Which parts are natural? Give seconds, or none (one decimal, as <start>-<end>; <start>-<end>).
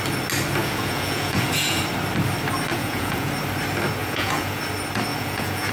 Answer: 0.0-0.6; 1.8-2.7; 3.3-4.0; 4.6-5.1